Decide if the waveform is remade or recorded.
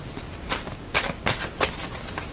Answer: recorded